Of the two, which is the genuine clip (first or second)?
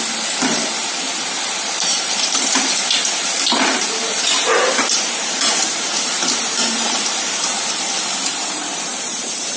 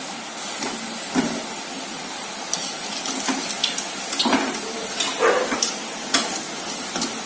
second